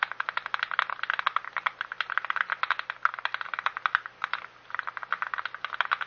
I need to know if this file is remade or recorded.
recorded